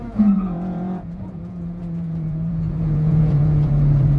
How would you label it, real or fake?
fake